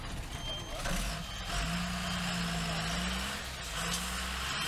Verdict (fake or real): real